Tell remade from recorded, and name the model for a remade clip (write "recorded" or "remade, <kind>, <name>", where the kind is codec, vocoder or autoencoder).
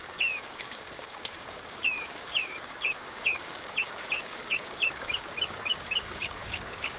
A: remade, codec, DAC